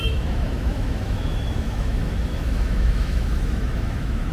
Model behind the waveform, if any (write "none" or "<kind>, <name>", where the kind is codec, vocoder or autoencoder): autoencoder, DAC-VAE